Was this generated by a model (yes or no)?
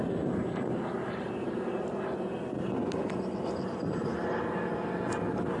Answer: no